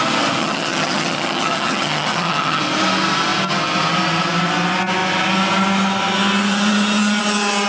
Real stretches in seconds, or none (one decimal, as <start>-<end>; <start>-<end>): 0.0-0.4; 2.6-7.7

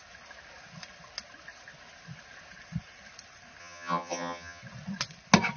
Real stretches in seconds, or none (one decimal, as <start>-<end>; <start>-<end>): 0.0-3.6; 4.6-5.6

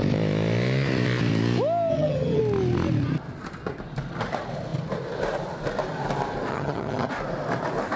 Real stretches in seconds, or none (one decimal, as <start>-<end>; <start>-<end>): 0.0-1.9; 2.4-6.5; 7.1-8.0

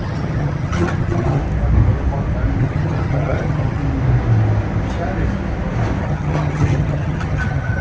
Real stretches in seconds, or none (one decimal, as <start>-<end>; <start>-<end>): 1.4-2.6; 3.8-6.0

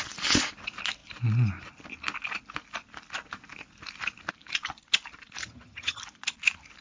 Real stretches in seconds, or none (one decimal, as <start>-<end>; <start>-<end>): 0.0-5.4; 6.0-6.8

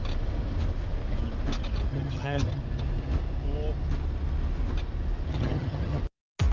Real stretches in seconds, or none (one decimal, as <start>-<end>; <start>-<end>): 0.0-1.9; 2.6-5.3; 6.0-6.5

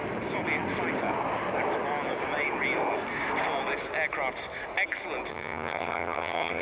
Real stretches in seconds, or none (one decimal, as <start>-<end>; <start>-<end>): 0.0-5.3

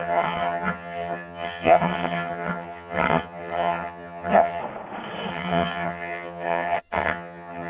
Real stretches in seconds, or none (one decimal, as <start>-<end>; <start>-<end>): 4.6-5.3